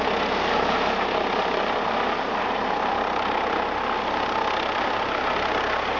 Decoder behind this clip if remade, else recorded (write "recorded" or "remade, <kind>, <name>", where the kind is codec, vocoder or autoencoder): recorded